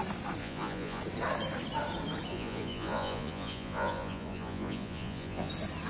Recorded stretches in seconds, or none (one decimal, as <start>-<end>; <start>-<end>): 0.0-0.4; 1.0-2.3; 5.5-5.9